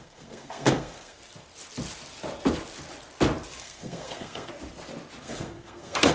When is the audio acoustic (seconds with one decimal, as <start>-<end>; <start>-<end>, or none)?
1.2-3.6; 4.5-5.2